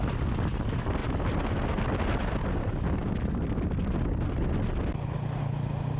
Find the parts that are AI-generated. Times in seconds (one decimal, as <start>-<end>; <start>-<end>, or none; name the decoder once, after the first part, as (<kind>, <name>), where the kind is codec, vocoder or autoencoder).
none